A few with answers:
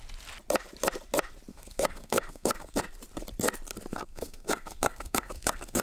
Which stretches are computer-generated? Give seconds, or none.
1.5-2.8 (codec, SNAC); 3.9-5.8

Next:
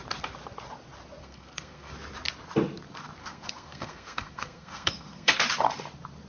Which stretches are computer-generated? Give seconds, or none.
1.2-1.9 (codec, SNAC); 3.2-5.3